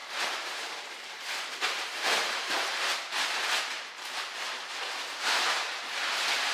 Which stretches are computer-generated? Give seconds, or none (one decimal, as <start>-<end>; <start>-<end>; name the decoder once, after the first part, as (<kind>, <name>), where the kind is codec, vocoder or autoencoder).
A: 0.0-6.5 (vocoder, BigVGAN v2)

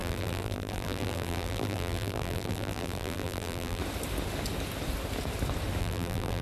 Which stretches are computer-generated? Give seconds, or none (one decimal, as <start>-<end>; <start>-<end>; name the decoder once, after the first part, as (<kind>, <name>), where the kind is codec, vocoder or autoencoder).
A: 0.0-3.8 (vocoder, BigVGAN v2); 5.8-6.4